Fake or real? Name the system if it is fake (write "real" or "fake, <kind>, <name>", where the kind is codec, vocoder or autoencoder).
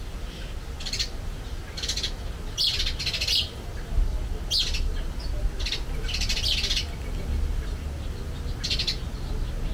real